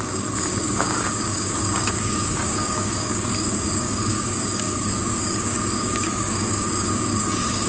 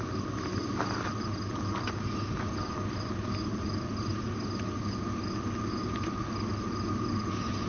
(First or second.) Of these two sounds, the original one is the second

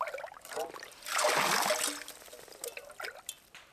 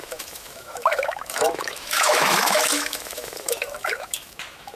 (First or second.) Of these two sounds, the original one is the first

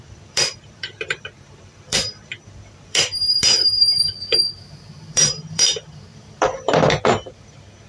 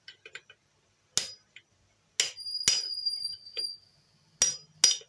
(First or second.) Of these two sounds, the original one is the second